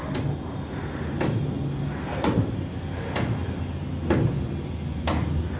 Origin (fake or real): real